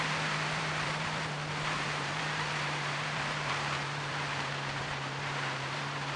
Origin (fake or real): fake